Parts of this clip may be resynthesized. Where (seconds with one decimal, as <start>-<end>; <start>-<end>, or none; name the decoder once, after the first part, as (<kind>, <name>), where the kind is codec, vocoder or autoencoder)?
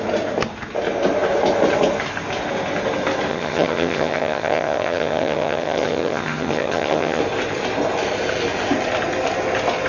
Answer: 3.3-7.2 (vocoder, HiFi-GAN)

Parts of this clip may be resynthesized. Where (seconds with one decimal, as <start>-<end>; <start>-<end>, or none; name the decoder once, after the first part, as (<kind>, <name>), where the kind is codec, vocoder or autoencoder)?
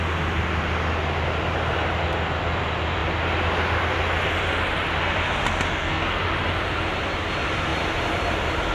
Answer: 5.7-6.2 (codec, SNAC)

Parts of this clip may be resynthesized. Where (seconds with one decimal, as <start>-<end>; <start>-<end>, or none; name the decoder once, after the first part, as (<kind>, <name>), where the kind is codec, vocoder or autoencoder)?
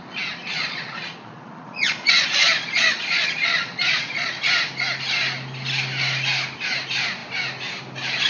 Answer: 0.4-4.3 (vocoder, Vocos)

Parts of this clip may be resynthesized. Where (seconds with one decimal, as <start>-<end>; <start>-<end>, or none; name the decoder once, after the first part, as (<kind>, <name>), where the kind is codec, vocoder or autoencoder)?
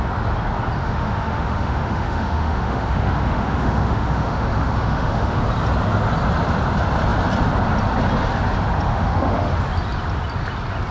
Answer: 0.8-5.4 (autoencoder, DAC-VAE); 8.9-9.5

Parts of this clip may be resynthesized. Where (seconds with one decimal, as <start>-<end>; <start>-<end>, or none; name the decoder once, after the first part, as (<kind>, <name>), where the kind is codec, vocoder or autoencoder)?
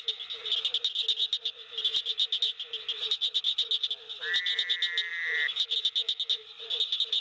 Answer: none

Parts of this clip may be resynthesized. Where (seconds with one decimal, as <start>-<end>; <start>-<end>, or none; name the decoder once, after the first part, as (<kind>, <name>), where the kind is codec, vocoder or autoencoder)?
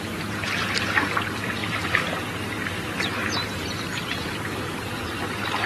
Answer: 0.0-5.7 (vocoder, BigVGAN v2)